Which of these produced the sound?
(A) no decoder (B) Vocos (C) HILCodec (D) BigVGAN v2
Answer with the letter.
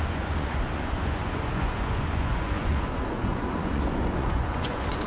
B